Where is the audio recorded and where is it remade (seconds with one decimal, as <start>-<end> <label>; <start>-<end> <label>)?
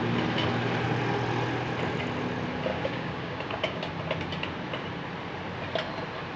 0.0-2.7 recorded; 2.7-3.8 remade; 3.8-6.4 recorded